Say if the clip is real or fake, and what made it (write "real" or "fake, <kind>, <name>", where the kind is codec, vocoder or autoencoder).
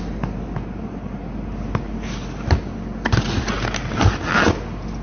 real